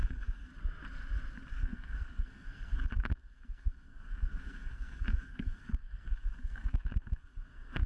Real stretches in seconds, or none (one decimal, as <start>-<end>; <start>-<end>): 0.5-1.5